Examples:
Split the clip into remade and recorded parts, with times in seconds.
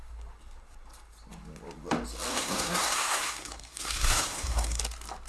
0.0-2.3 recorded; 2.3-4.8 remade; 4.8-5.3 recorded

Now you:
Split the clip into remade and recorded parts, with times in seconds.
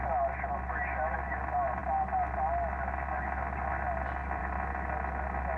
0.0-5.6 recorded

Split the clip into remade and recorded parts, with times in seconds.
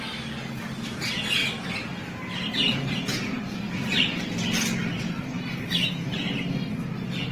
0.0-7.3 recorded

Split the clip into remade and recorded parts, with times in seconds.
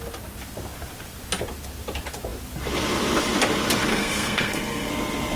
0.0-3.9 recorded; 3.9-4.9 remade; 4.9-5.4 recorded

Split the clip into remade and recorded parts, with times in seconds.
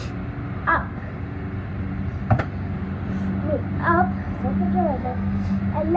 0.0-5.0 recorded; 5.0-5.6 remade; 5.6-6.0 recorded